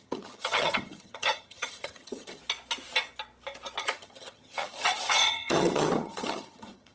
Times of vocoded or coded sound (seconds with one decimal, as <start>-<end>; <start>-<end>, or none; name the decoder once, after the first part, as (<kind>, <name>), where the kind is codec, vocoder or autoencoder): 0.0-2.4 (vocoder, HiFi-GAN); 3.8-6.9